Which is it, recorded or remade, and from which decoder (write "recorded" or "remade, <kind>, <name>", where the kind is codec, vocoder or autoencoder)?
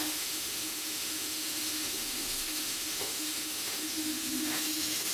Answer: remade, autoencoder, DAC-VAE